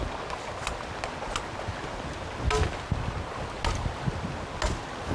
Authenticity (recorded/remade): recorded